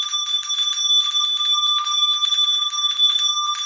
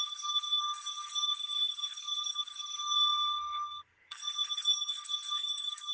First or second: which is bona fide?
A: first